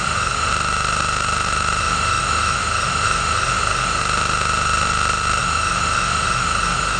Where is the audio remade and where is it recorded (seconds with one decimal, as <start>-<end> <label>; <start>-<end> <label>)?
0.0-0.5 remade; 0.5-1.8 recorded; 1.8-4.0 remade; 4.0-5.4 recorded; 5.4-7.0 remade